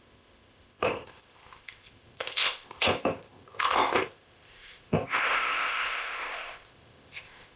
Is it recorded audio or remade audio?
remade